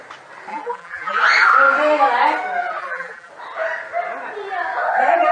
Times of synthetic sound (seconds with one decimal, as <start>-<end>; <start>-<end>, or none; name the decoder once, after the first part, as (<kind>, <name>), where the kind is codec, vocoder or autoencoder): 0.5-1.2 (vocoder, BigVGAN v2); 2.8-3.3